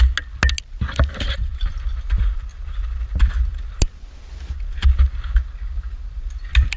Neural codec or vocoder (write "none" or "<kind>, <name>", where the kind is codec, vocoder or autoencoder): none